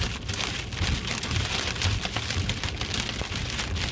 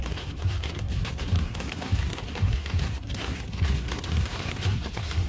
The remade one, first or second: second